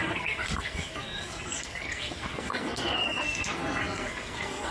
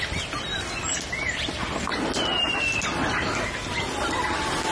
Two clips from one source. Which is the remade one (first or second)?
first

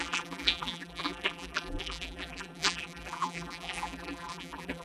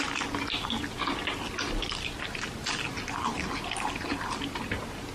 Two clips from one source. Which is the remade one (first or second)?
first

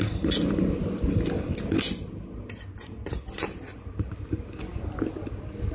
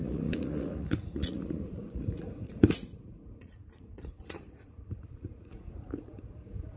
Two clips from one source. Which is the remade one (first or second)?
second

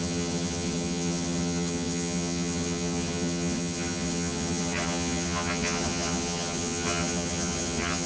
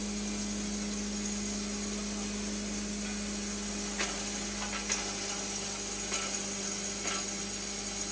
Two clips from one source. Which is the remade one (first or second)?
first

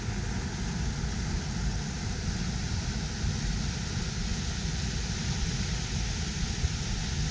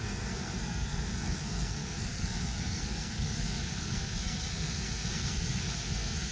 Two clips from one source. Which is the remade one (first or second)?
second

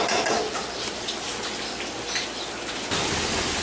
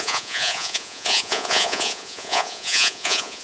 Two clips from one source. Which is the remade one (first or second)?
second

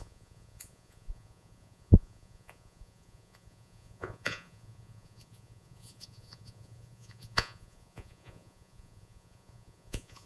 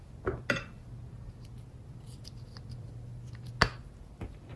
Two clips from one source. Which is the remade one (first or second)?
first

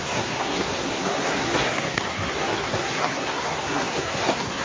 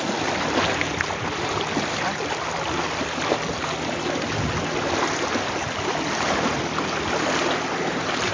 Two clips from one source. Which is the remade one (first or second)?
first